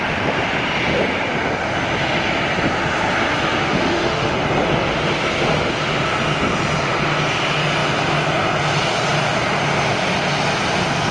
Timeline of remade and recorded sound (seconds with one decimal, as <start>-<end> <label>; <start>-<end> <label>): 0.0-3.6 recorded; 3.6-4.3 remade; 4.3-11.1 recorded